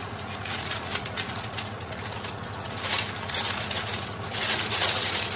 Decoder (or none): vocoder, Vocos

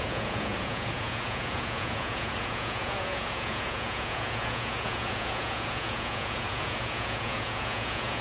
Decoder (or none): vocoder, Vocos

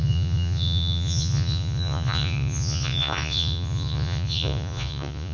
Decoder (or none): vocoder, Vocos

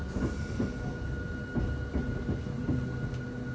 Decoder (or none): none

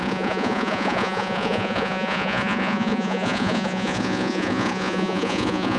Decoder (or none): vocoder, Vocos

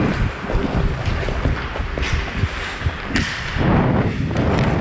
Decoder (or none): none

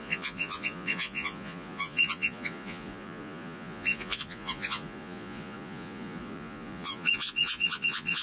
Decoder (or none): vocoder, Vocos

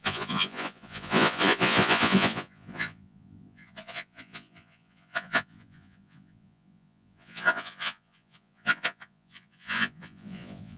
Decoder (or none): vocoder, Vocos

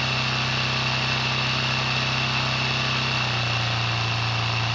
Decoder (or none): none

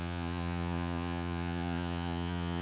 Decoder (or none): vocoder, Vocos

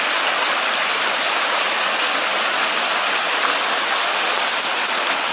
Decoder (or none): none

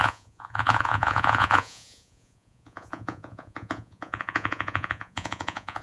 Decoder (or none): vocoder, Vocos